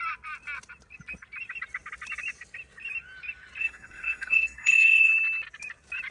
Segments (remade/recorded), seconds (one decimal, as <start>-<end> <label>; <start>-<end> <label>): 0.0-3.6 recorded; 3.6-5.1 remade; 5.1-6.1 recorded